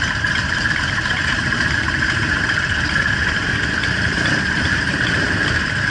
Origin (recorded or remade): remade